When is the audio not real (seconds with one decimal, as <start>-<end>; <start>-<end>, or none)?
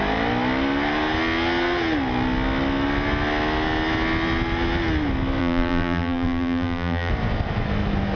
5.4-7.1